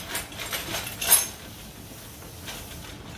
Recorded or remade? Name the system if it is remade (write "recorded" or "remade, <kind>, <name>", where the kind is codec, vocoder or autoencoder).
recorded